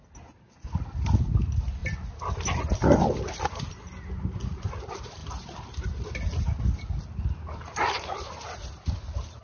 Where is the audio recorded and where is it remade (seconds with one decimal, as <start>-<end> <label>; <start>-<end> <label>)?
0.0-9.4 recorded